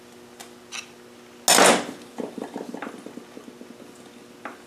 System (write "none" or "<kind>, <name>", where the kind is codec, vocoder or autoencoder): none